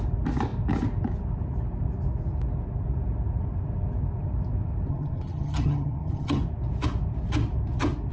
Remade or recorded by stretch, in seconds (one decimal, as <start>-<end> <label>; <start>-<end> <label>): 0.0-4.9 recorded; 4.9-6.4 remade; 6.4-8.1 recorded